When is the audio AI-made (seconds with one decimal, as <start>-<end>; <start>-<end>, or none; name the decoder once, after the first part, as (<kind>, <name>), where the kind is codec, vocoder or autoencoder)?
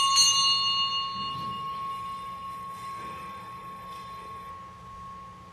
1.3-4.5 (codec, DAC)